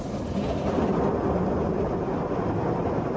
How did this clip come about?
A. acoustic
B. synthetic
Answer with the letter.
A